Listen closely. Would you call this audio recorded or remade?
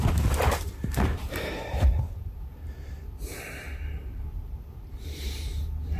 remade